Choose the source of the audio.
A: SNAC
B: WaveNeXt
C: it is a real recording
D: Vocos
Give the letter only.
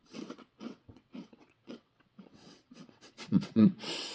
B